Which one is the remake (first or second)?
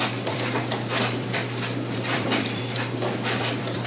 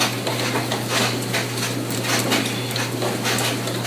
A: first